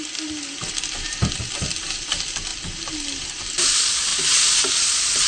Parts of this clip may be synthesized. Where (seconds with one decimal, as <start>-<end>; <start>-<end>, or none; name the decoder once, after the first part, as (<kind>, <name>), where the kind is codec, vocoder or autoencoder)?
none